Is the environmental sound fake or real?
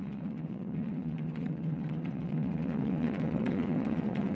fake